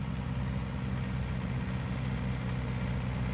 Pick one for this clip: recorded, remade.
recorded